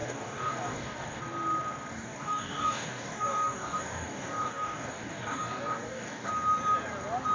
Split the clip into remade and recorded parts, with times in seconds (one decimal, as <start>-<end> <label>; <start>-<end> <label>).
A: 0.0-1.2 remade; 1.2-1.9 recorded; 1.9-6.3 remade; 6.3-7.3 recorded